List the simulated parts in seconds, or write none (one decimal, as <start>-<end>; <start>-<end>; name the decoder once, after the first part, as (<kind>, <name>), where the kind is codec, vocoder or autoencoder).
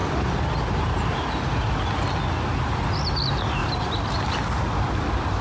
none